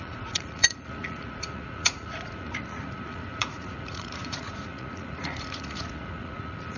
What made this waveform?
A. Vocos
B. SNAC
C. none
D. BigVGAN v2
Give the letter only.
A